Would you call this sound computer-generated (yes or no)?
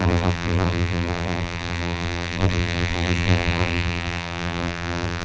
yes